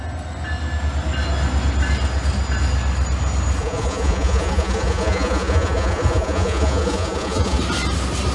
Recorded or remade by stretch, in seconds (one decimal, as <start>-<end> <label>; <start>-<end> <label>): 0.0-3.6 recorded; 3.6-7.6 remade; 7.6-8.3 recorded